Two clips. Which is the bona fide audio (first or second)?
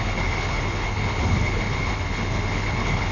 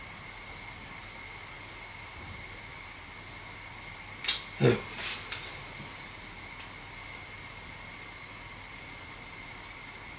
second